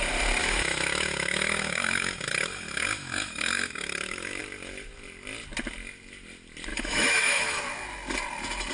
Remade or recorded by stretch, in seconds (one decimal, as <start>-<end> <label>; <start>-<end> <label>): 0.0-0.4 recorded; 0.4-4.4 remade; 4.4-6.7 recorded; 6.7-7.6 remade; 7.6-8.7 recorded